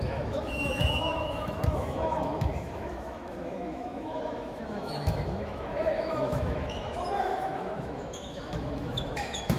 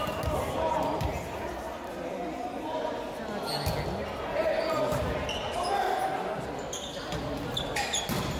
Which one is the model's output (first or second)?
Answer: first